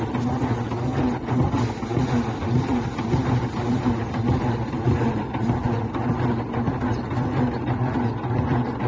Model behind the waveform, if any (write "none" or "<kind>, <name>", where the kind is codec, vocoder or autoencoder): none